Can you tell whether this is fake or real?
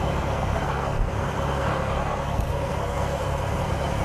fake